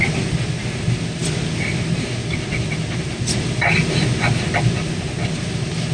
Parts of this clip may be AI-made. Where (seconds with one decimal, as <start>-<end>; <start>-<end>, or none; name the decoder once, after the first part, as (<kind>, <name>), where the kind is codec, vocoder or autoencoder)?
none